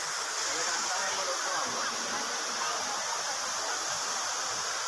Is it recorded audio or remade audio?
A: recorded